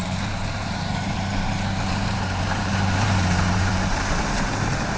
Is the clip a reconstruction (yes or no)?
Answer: yes